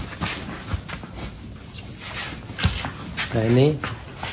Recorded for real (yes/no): yes